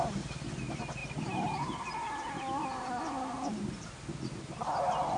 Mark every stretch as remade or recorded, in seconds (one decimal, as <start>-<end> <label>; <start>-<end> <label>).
0.0-5.2 recorded